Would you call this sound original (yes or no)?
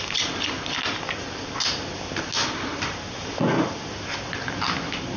yes